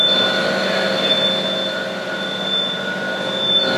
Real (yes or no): yes